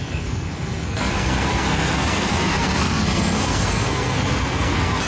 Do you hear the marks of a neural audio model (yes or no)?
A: yes